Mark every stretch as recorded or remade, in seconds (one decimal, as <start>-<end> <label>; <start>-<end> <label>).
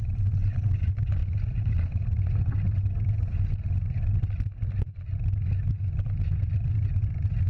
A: 0.0-7.5 recorded